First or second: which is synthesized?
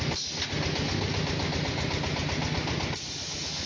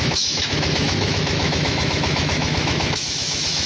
second